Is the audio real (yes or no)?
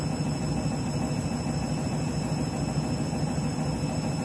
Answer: yes